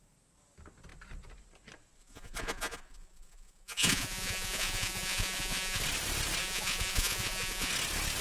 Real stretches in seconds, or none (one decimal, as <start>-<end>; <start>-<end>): 0.0-2.0; 5.8-6.4; 7.7-8.2